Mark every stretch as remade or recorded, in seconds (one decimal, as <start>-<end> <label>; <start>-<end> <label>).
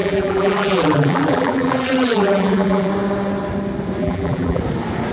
0.0-2.9 remade; 2.9-4.0 recorded; 4.0-4.6 remade; 4.6-5.1 recorded